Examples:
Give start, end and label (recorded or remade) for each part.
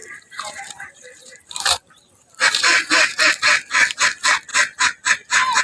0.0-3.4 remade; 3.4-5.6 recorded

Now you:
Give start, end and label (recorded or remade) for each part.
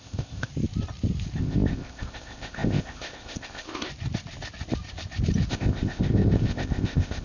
0.0-0.5 remade; 0.5-1.4 recorded; 1.4-3.9 remade; 3.9-5.5 recorded; 5.5-7.2 remade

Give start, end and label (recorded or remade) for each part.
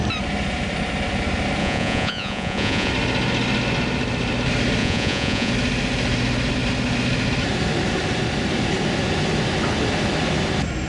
0.0-1.6 recorded; 1.6-2.9 remade; 2.9-4.8 recorded; 4.8-5.5 remade; 5.5-10.9 recorded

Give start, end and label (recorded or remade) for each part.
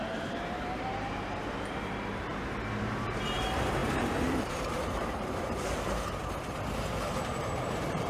0.0-2.3 remade; 2.3-2.8 recorded; 2.8-6.2 remade; 6.2-7.1 recorded; 7.1-8.1 remade